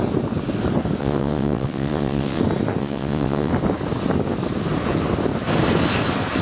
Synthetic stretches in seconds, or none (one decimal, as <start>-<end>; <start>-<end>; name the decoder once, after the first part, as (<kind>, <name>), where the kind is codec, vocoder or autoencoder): 1.0-2.4 (vocoder, WaveNeXt); 2.8-3.5